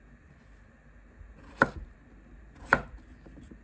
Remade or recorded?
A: recorded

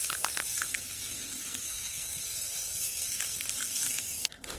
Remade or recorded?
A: remade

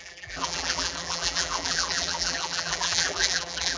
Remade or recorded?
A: remade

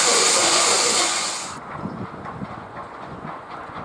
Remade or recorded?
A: remade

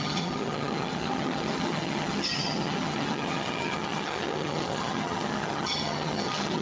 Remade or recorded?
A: remade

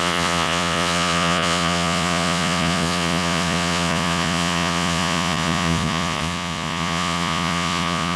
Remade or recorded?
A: remade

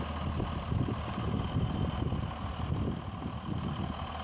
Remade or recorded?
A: recorded